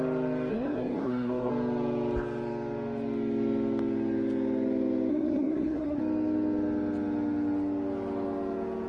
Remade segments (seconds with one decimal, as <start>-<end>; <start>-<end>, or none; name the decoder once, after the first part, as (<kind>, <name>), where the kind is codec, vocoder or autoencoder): 0.5-1.5 (codec, SNAC); 5.1-6.0